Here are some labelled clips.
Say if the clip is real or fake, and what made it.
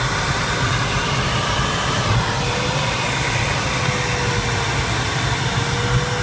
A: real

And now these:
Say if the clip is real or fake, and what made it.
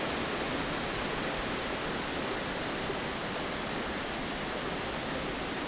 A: real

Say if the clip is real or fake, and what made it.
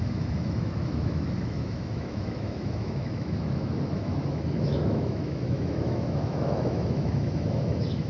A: fake, autoencoder, DAC-VAE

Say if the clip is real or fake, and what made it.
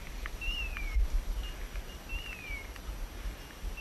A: real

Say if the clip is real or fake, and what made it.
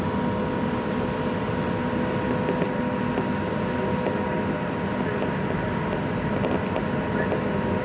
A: real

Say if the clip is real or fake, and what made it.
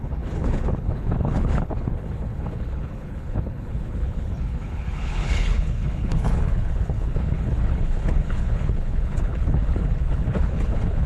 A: fake, codec, HILCodec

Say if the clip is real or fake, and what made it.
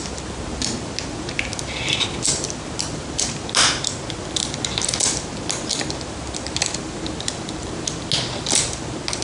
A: real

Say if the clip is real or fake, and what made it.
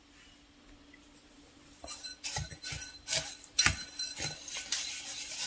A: real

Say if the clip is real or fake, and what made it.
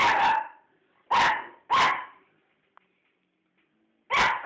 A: real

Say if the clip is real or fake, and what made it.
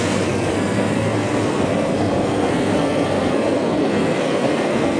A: fake, codec, SNAC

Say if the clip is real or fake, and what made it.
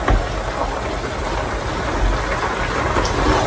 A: real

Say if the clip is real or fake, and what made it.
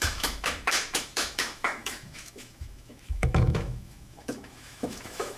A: fake, autoencoder, DAC-VAE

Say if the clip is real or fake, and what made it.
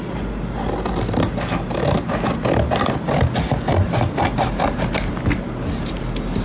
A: real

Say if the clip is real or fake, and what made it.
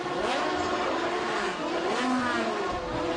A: real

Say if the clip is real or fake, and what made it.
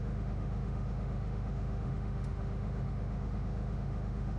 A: fake, autoencoder, DAC-VAE